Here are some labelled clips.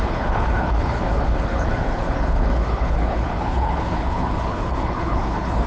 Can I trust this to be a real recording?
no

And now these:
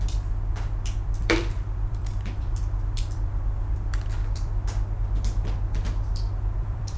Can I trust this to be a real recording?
no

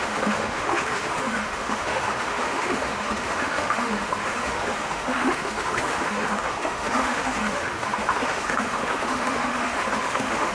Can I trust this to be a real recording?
no